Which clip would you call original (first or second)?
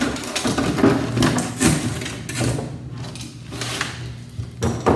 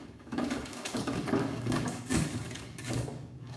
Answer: first